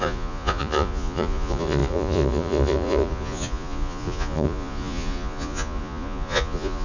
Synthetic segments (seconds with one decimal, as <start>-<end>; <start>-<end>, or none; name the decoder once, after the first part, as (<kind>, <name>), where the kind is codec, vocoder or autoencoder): 0.0-6.8 (vocoder, Vocos)

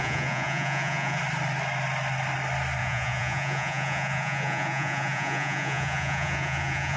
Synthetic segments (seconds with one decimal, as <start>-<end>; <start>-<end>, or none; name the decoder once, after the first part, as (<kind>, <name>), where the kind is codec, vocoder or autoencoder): 0.0-1.2 (vocoder, Vocos); 2.8-7.0